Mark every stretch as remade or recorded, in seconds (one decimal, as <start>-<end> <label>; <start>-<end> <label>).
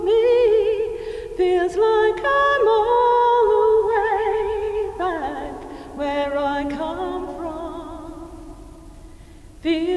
0.0-3.8 recorded; 3.8-5.7 remade; 5.7-10.0 recorded